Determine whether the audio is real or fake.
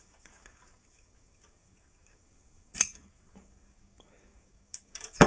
fake